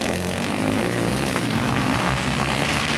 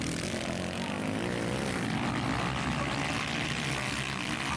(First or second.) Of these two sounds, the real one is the second